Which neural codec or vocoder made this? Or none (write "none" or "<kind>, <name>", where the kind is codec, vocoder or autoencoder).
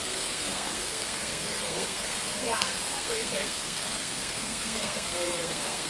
codec, SNAC